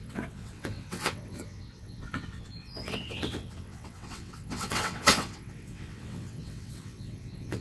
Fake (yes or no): yes